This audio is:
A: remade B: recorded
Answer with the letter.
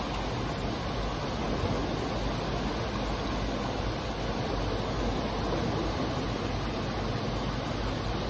B